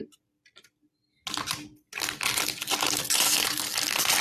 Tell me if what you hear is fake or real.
real